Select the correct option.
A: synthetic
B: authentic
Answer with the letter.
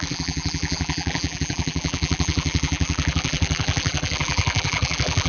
A